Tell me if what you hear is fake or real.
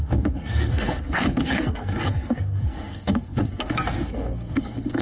fake